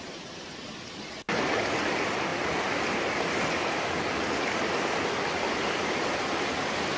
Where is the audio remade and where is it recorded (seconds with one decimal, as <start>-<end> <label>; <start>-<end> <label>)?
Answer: 0.0-7.0 recorded